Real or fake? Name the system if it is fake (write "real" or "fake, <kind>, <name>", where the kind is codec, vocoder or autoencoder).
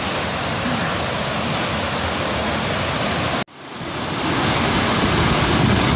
real